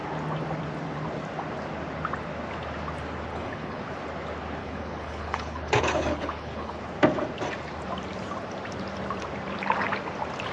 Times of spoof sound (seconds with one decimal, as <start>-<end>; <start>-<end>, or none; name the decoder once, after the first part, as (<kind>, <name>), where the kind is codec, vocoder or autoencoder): 3.3-3.8 (codec, HILCodec); 4.6-6.8